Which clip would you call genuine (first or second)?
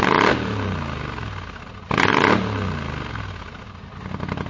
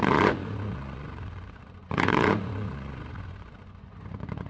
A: first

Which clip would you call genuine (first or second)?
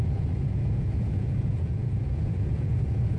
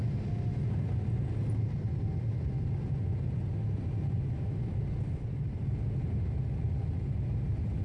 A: second